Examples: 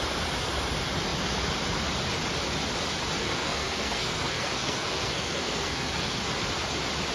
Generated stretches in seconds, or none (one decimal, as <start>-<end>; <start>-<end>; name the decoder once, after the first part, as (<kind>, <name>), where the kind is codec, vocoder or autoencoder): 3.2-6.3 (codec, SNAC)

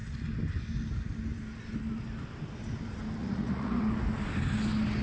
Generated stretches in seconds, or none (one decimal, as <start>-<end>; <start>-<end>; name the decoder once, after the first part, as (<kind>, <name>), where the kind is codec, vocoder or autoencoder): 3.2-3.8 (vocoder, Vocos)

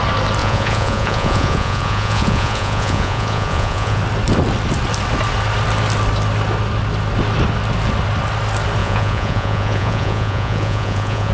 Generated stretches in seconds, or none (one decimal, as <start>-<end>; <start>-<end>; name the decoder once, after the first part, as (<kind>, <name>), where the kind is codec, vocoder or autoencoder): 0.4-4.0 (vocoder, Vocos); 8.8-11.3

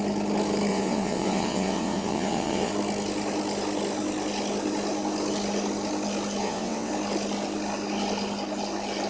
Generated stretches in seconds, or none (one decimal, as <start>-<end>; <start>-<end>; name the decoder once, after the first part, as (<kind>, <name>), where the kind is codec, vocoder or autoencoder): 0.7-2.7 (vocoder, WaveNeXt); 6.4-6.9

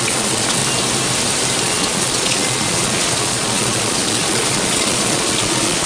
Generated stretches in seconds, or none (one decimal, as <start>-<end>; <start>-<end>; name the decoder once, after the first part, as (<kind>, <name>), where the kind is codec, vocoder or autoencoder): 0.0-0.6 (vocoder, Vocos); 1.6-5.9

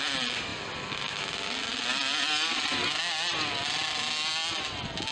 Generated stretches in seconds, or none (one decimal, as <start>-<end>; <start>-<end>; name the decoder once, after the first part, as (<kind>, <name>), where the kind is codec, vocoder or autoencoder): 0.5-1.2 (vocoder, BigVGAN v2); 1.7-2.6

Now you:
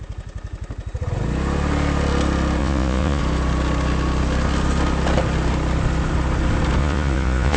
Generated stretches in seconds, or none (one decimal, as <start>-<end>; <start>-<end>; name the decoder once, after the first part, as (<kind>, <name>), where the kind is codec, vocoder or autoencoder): 2.6-3.2 (vocoder, Vocos); 6.8-7.6

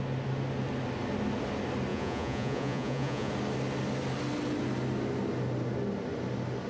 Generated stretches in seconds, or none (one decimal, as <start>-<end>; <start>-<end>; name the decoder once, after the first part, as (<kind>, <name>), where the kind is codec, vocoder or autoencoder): 1.9-3.3 (vocoder, Vocos)